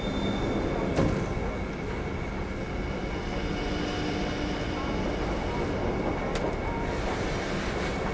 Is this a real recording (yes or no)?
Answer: yes